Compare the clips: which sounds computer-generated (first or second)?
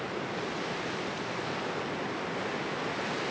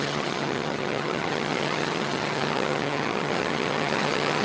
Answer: second